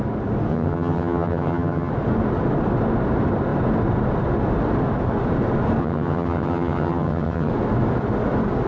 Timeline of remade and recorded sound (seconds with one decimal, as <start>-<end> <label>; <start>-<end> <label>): 0.0-0.5 recorded; 0.5-1.9 remade; 1.9-5.8 recorded; 5.8-7.5 remade; 7.5-8.7 recorded